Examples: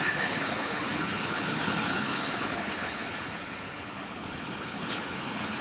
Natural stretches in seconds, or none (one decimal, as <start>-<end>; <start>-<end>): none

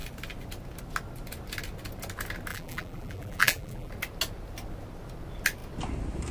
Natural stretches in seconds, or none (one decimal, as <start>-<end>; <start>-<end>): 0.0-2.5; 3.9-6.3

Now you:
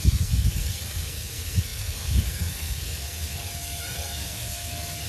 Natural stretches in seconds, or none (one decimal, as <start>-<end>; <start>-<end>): none

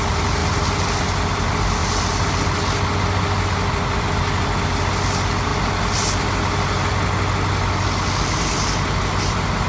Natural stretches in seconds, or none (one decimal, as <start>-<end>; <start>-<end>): 0.0-9.7

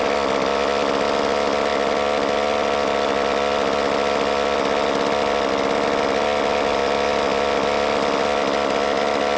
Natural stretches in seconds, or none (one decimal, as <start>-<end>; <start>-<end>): 0.0-9.4